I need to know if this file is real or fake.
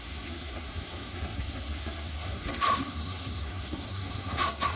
fake